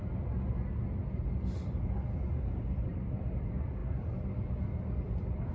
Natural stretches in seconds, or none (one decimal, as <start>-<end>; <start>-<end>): 0.0-5.5